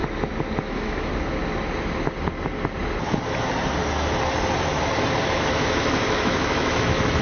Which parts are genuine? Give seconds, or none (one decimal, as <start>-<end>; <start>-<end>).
0.0-0.6; 1.1-5.2